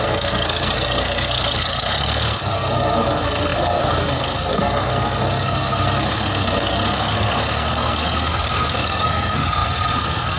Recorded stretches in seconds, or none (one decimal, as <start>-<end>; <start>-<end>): none

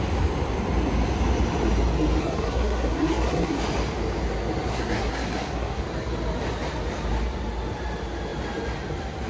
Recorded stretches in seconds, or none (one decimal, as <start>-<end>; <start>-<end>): 0.0-2.2; 3.6-4.7; 5.8-9.3

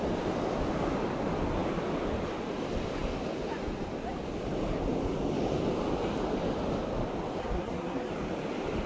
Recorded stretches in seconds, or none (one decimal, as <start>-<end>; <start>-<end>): 0.0-7.4; 8.1-8.9

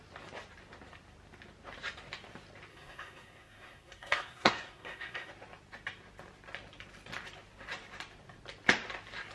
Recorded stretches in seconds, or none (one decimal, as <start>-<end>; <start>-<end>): 0.0-2.7; 5.3-9.3